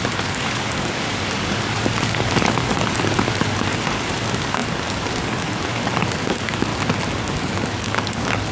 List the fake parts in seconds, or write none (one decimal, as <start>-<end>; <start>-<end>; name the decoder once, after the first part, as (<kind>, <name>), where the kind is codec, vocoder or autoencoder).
0.0-6.7 (codec, DAC); 7.2-8.5